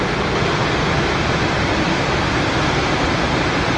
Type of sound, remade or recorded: recorded